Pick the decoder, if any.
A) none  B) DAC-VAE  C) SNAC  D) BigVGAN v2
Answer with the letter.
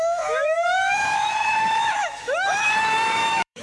B